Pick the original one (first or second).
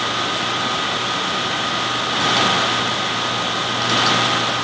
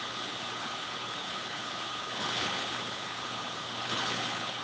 first